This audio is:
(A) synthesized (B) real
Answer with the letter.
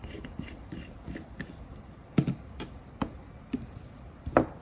B